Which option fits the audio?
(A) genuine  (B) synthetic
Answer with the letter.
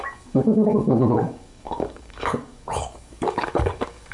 B